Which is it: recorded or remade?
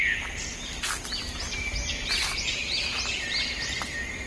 recorded